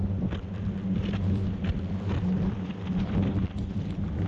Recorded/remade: remade